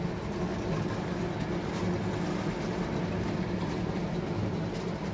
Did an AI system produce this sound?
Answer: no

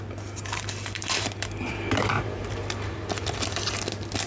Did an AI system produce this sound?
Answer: yes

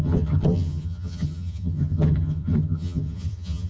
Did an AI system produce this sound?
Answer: yes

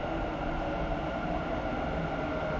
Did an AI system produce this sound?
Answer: no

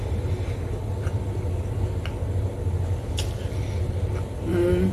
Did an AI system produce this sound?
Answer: no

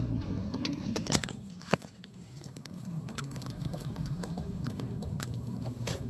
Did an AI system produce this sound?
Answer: yes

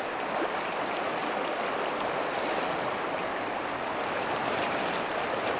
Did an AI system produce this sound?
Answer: no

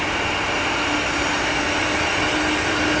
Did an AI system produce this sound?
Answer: no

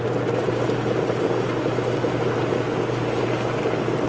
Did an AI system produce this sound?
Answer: no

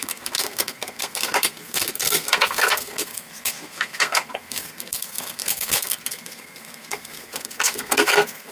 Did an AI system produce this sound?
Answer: yes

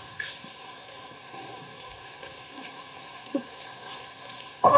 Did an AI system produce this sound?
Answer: yes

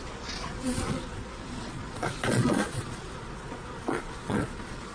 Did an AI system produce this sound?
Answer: yes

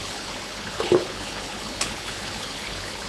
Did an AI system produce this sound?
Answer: yes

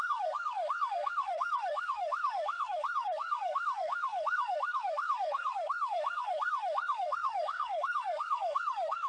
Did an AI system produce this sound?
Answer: yes